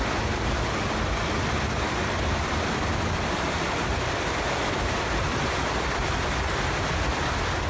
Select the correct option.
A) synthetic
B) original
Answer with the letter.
A